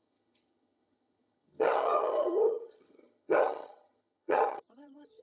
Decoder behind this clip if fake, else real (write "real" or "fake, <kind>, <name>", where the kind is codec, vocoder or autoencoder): fake, vocoder, HiFi-GAN